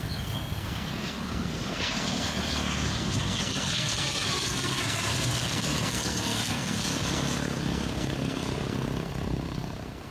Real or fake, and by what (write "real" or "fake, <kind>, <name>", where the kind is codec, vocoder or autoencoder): fake, codec, SNAC